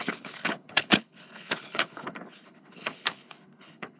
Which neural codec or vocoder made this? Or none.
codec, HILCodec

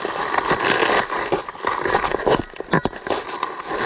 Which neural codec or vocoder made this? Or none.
none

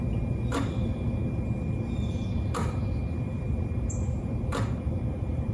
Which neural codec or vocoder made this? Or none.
vocoder, BigVGAN v2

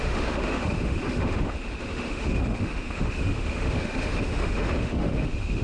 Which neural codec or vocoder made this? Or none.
autoencoder, DAC-VAE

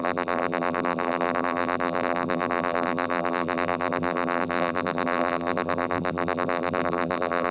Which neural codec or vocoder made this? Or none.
vocoder, BigVGAN v2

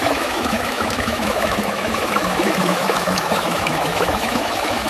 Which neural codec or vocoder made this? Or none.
autoencoder, DAC-VAE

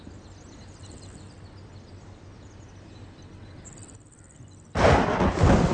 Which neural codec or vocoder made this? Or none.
none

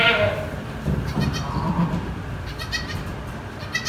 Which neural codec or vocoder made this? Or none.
vocoder, BigVGAN v2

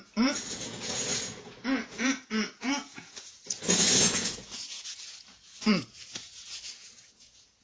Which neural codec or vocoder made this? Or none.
vocoder, Vocos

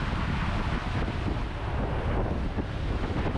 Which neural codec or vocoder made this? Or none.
none